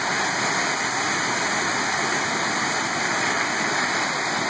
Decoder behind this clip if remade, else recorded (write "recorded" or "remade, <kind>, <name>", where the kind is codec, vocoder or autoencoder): recorded